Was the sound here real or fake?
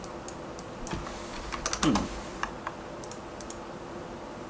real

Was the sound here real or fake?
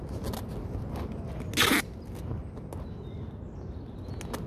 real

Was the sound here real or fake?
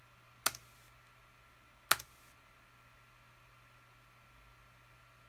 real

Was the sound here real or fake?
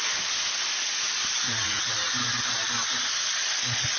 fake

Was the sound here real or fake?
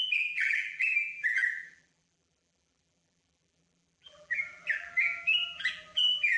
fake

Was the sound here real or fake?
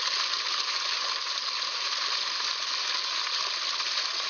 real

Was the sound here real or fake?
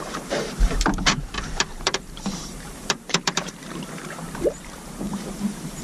fake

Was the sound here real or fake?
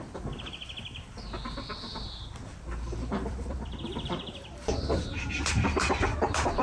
fake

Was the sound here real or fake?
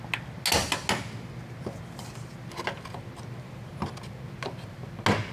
real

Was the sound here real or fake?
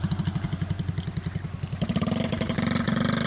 real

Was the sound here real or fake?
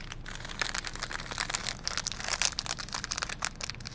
real